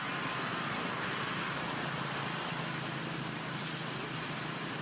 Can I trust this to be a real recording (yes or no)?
yes